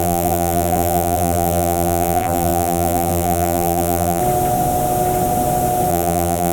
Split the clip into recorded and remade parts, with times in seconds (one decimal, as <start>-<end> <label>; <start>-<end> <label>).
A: 0.0-4.2 remade; 4.2-5.9 recorded; 5.9-6.5 remade